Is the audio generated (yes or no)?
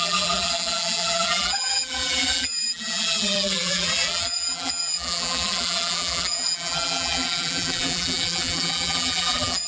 yes